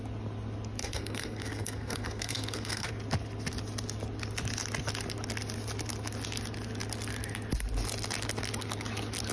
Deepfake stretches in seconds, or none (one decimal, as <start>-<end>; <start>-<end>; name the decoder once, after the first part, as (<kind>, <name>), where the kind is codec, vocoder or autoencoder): 0.8-2.9 (codec, SNAC)